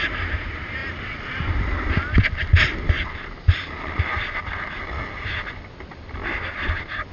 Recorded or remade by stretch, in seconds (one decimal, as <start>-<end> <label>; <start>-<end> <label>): 0.0-7.1 recorded